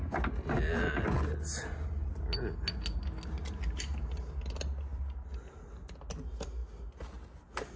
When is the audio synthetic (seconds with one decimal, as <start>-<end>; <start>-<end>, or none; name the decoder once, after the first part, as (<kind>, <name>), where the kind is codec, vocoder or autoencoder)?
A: none